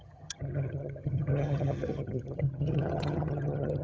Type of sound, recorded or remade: remade